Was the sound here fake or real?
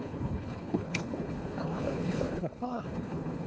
fake